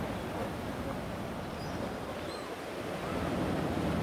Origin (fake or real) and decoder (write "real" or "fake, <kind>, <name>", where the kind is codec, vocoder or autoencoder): fake, vocoder, BigVGAN v2